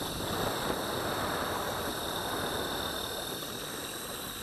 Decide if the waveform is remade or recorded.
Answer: recorded